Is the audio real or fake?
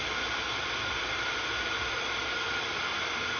real